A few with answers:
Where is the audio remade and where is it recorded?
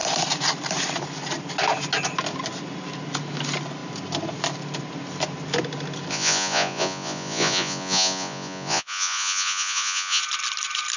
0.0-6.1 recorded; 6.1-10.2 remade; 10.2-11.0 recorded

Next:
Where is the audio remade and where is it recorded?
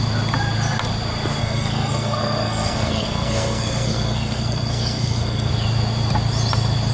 0.0-1.4 recorded; 1.4-5.5 remade; 5.5-6.9 recorded